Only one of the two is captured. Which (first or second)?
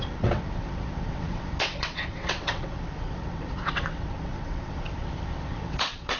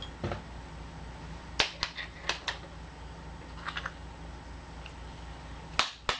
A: second